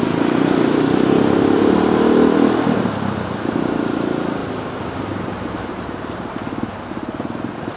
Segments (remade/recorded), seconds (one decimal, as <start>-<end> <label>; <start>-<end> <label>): 0.0-7.8 recorded